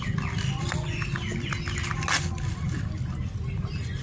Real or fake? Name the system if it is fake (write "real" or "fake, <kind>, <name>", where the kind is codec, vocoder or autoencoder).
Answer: real